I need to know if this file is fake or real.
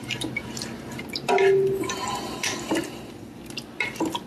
real